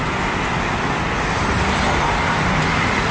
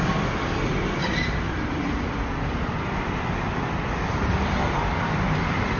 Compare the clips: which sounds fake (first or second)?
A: second